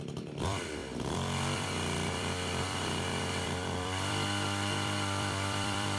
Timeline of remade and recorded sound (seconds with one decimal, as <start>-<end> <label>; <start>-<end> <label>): 0.0-6.0 remade